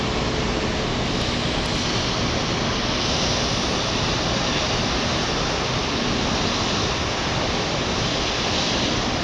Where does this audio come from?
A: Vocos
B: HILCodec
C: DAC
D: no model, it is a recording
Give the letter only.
D